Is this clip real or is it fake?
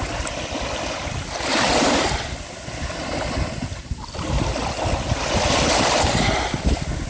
real